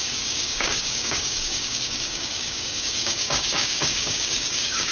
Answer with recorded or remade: remade